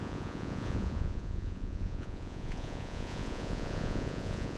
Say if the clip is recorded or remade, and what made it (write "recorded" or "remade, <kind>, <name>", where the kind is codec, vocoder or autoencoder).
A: remade, vocoder, Vocos